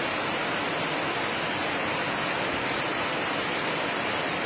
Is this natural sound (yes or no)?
yes